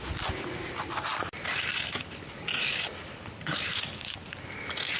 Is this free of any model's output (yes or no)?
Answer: yes